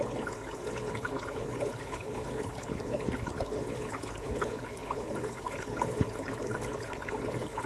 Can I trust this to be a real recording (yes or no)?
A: no